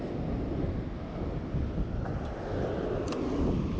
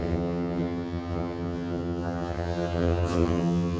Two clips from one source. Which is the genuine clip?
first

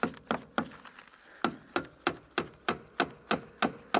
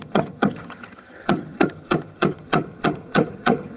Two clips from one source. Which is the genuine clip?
first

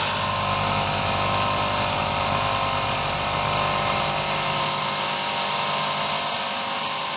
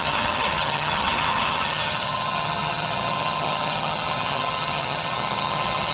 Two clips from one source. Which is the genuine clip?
first